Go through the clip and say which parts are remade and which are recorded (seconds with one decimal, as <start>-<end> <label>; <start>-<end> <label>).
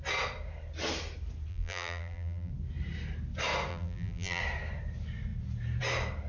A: 0.0-1.5 recorded; 1.5-2.5 remade; 2.5-3.7 recorded; 3.7-4.4 remade; 4.4-6.3 recorded